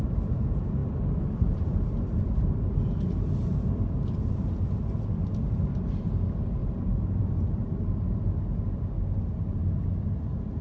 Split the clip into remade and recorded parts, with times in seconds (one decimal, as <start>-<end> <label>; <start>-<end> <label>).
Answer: 0.0-6.6 recorded; 6.6-7.7 remade; 7.7-10.6 recorded